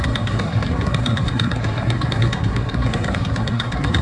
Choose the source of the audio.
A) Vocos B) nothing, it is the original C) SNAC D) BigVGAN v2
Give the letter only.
C